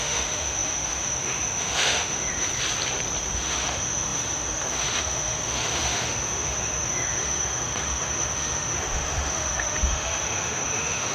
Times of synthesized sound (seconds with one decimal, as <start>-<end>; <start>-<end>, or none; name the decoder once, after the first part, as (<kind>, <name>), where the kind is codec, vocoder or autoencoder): 0.0-2.5 (autoencoder, DAC-VAE); 3.3-11.1